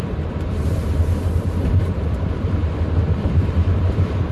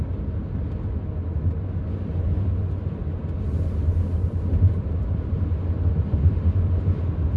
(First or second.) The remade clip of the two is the first